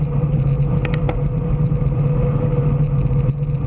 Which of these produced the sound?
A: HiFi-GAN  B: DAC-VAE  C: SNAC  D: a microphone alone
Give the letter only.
D